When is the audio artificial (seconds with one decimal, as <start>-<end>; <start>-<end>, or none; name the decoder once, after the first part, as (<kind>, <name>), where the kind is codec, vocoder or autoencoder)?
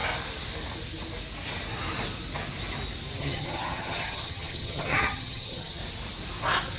3.2-5.8 (vocoder, HiFi-GAN)